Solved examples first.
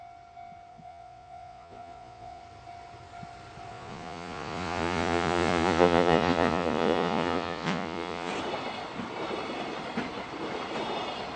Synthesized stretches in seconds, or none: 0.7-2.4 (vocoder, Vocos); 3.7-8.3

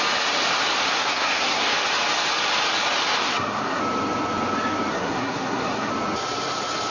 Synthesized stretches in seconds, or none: 1.0-1.7 (codec, SNAC); 3.2-3.8; 4.9-5.9

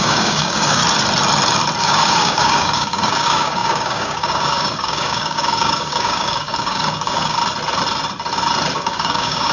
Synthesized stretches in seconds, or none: 0.0-0.8 (codec, DAC); 1.8-7.4; 8.8-9.5